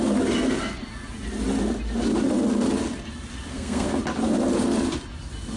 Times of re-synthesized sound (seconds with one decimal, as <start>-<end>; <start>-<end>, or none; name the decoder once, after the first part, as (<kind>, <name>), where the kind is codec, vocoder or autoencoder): 3.5-4.0 (codec, SNAC)